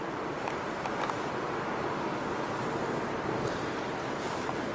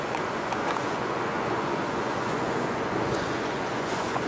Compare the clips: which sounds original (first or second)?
first